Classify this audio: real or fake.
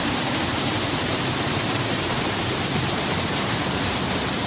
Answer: fake